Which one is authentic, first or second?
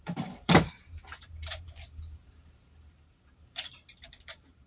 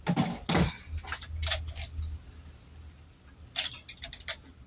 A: second